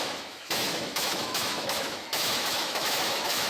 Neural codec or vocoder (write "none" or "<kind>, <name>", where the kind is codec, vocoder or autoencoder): autoencoder, DAC-VAE